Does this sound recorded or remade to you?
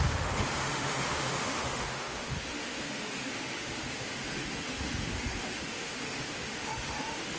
remade